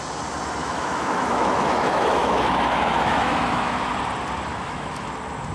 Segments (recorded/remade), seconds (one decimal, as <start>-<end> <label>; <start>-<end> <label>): 0.0-0.6 recorded; 0.6-3.9 remade; 3.9-4.5 recorded; 4.5-5.1 remade; 5.1-5.5 recorded